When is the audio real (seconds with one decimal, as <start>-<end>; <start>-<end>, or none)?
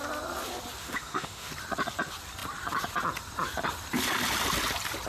0.0-0.8; 1.5-5.1